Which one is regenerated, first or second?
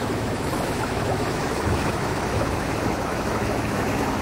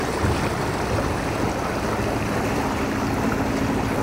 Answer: first